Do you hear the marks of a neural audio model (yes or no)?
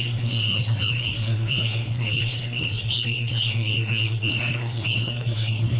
yes